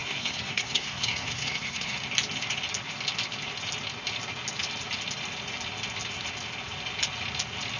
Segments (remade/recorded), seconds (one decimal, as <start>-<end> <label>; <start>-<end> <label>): 0.0-2.0 remade; 2.0-7.8 recorded